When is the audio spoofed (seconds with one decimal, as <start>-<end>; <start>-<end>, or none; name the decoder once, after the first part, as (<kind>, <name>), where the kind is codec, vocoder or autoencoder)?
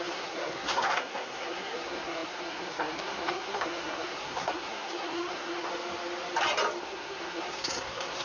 0.0-5.7 (codec, SNAC); 6.8-8.2